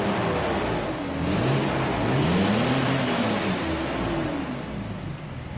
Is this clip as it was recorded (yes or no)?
yes